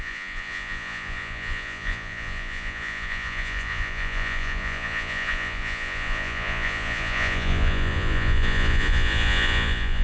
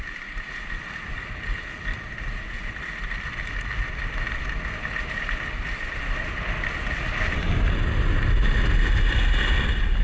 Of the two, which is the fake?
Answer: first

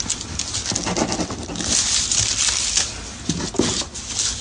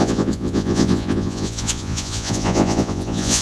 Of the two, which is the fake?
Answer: second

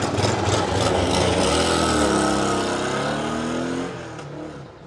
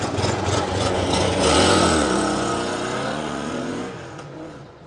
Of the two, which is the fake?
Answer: second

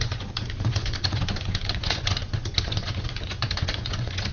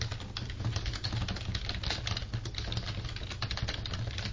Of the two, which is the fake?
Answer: first